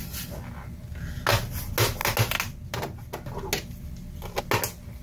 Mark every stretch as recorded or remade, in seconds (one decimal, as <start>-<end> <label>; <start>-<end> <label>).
0.0-5.0 recorded